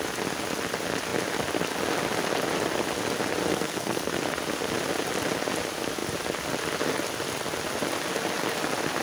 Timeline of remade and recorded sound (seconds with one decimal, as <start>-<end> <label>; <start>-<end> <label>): 0.0-3.5 recorded; 3.5-4.1 remade; 4.1-9.0 recorded

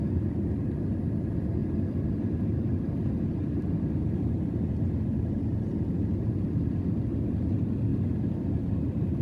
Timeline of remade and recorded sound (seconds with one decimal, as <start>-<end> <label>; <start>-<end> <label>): 0.0-7.9 recorded; 7.9-9.2 remade

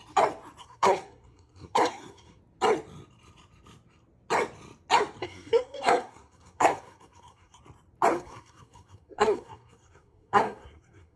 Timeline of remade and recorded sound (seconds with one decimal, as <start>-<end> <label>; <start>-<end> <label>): 0.0-0.6 recorded; 0.6-2.4 remade; 2.4-5.2 recorded; 5.2-7.6 remade; 7.6-8.1 recorded; 8.1-11.2 remade

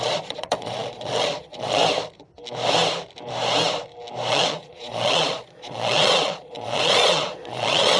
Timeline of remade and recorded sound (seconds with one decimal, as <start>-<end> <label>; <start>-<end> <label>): 0.0-1.8 remade; 1.8-4.3 recorded; 4.3-8.0 remade

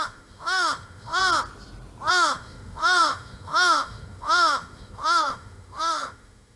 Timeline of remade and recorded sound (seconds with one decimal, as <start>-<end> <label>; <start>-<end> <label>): 0.0-1.2 remade; 1.2-2.1 recorded; 2.1-6.6 remade

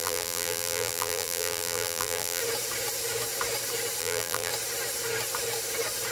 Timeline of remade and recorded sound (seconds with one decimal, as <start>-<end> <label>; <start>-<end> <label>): 0.0-2.4 remade; 2.4-4.0 recorded; 4.0-4.5 remade; 4.5-6.1 recorded